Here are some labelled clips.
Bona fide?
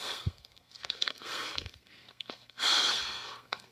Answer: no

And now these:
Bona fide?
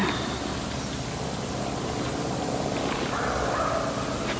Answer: yes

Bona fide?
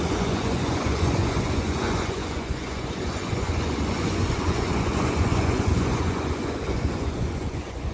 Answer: no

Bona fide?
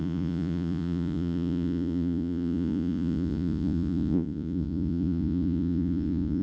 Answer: no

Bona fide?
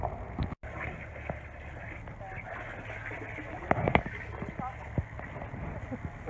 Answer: yes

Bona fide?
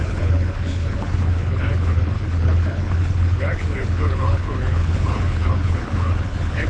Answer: no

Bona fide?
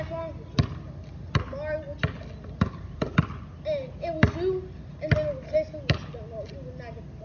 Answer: yes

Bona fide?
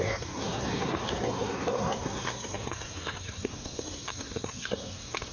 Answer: no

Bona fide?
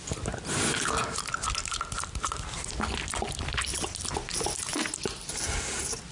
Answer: yes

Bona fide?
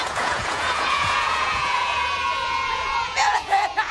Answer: no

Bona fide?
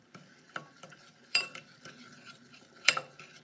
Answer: no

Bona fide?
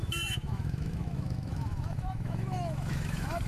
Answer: no